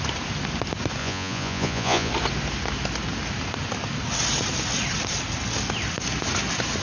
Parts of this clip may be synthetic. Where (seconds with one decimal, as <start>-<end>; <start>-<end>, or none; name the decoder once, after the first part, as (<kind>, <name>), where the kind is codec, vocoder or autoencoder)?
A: 1.0-2.1 (vocoder, Vocos)